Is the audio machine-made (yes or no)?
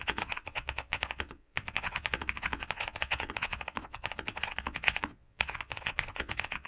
yes